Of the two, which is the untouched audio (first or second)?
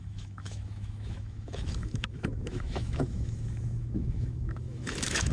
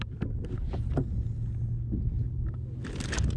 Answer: second